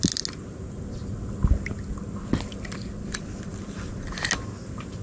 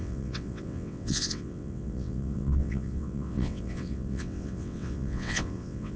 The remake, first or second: second